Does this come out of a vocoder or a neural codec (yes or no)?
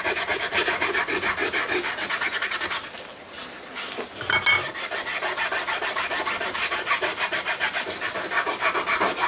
no